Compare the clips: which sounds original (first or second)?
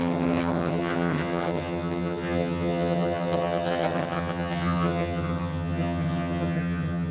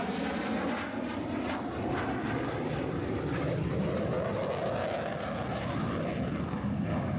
second